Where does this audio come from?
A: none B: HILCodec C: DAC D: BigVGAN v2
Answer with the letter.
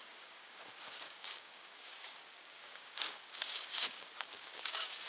C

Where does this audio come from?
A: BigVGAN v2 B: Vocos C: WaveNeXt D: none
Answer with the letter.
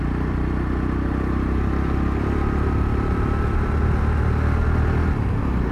D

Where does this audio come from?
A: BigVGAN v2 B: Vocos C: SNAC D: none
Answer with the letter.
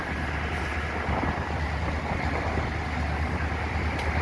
D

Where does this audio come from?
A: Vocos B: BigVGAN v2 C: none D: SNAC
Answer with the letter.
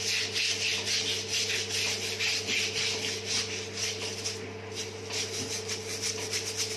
C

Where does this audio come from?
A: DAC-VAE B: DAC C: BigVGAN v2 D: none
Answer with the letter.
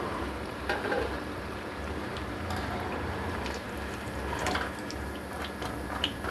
C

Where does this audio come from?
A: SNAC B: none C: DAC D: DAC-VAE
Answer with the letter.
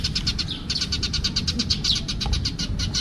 B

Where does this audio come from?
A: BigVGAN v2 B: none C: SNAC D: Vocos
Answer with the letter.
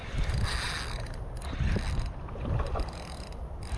B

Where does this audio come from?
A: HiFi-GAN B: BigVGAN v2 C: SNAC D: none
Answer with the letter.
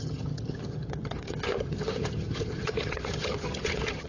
A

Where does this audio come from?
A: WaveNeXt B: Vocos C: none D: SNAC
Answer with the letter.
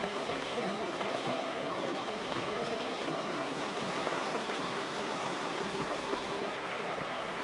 D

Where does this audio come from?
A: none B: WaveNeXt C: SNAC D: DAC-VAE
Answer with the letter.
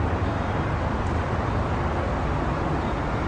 A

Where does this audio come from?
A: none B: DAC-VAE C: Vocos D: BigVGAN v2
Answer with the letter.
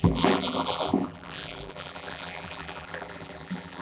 D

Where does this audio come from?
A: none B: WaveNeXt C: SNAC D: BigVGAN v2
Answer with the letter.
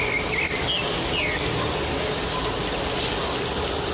A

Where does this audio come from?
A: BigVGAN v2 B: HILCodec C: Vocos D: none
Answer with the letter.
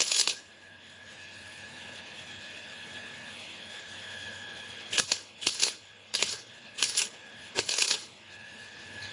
B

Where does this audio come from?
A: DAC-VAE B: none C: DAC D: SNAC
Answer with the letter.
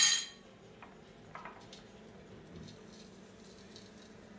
B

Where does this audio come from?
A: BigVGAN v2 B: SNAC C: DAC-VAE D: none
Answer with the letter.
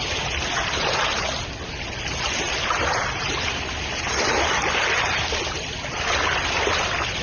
D